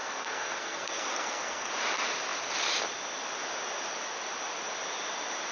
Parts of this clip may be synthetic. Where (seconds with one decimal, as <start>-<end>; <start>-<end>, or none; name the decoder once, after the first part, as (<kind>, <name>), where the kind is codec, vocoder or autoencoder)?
0.0-1.7 (codec, SNAC)

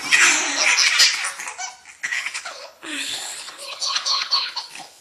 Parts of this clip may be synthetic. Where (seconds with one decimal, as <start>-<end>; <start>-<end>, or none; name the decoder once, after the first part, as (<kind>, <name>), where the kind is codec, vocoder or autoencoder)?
2.0-5.0 (codec, HILCodec)